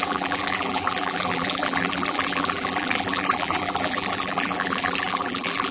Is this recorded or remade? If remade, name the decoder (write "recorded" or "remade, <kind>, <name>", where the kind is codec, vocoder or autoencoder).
remade, vocoder, BigVGAN v2